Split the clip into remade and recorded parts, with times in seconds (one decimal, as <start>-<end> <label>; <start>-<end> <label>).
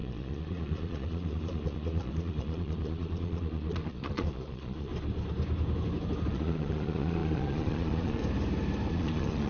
0.0-4.9 remade; 4.9-6.3 recorded; 6.3-8.2 remade; 8.2-8.9 recorded; 8.9-9.5 remade